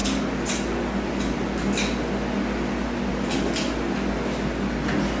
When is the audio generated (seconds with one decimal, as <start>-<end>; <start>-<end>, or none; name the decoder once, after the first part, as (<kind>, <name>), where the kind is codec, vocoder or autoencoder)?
none